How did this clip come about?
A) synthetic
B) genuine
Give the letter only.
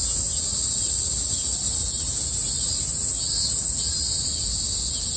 B